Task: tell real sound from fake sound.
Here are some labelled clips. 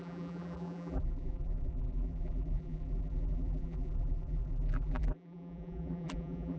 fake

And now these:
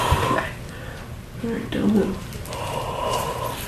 real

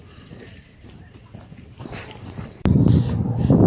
fake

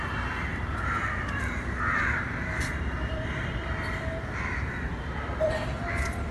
fake